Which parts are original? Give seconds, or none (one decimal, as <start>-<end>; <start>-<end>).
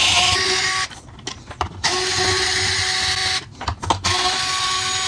0.0-5.1